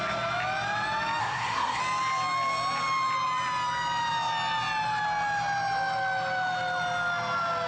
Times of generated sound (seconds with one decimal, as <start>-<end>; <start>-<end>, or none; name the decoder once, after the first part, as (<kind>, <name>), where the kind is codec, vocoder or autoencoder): 1.2-1.8 (codec, SNAC)